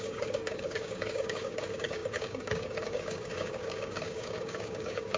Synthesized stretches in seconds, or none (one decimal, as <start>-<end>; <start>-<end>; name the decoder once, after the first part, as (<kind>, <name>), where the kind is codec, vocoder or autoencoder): 0.0-5.2 (codec, DAC)